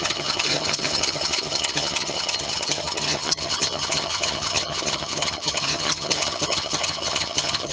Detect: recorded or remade remade